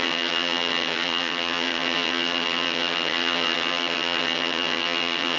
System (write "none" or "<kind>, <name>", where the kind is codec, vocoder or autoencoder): vocoder, HiFi-GAN